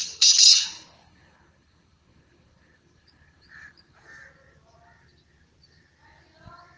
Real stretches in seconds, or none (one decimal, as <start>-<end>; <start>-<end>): 4.0-6.8